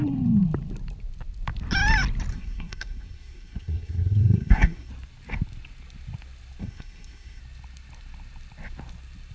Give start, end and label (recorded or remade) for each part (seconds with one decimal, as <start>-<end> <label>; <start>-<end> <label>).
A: 0.0-2.3 recorded; 2.3-4.9 remade; 4.9-6.6 recorded; 6.6-7.4 remade; 7.4-9.3 recorded